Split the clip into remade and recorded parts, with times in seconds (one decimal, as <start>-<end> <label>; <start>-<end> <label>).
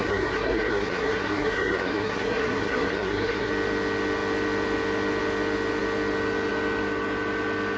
0.0-3.5 remade; 3.5-7.8 recorded